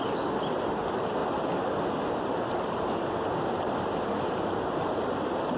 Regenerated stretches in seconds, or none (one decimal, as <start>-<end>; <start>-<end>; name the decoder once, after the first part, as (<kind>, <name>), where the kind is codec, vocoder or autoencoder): none